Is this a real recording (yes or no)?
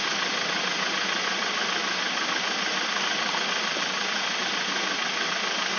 no